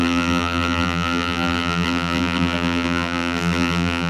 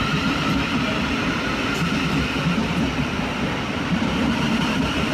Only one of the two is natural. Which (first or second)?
second